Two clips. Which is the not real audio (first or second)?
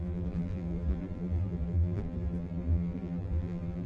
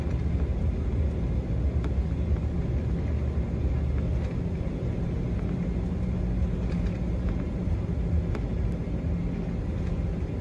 first